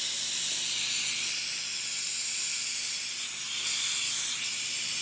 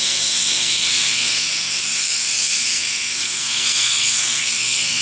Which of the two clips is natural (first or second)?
first